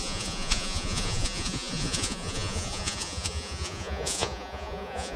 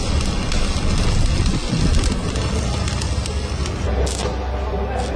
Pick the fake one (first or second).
first